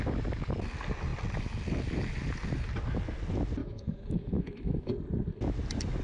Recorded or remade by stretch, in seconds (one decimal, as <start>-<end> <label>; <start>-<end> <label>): 0.0-3.6 recorded; 3.6-4.9 remade; 4.9-6.0 recorded